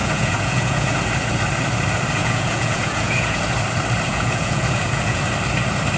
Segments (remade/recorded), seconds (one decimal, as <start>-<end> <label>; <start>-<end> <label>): 0.0-1.0 remade; 1.0-2.2 recorded; 2.2-3.4 remade; 3.4-4.1 recorded; 4.1-5.2 remade; 5.2-6.0 recorded